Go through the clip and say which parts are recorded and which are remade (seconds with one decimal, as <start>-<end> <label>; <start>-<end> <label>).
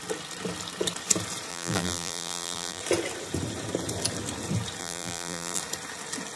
0.0-1.5 recorded; 1.5-2.8 remade; 2.8-4.8 recorded; 4.8-5.6 remade; 5.6-6.4 recorded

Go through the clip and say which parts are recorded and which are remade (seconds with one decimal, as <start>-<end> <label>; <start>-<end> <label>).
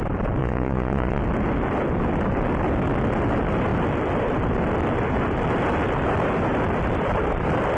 0.0-0.4 recorded; 0.4-1.2 remade; 1.2-7.8 recorded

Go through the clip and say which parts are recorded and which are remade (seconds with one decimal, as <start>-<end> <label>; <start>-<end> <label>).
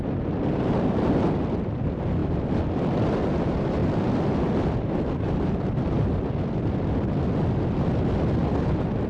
0.0-2.2 recorded; 2.2-2.7 remade; 2.7-3.8 recorded; 3.8-6.3 remade; 6.3-8.4 recorded; 8.4-9.1 remade